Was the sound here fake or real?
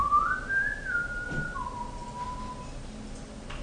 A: real